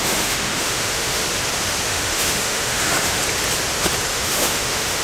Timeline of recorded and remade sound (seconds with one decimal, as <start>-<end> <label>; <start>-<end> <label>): 0.0-1.2 remade; 1.2-1.9 recorded; 1.9-3.2 remade; 3.2-4.1 recorded; 4.1-5.0 remade